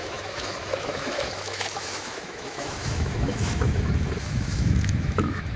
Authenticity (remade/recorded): remade